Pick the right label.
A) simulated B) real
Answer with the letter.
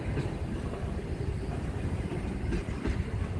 B